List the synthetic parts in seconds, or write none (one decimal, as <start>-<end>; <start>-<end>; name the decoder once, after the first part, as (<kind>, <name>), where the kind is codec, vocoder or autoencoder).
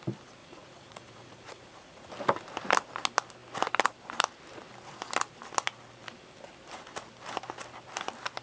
0.4-2.1 (vocoder, Vocos)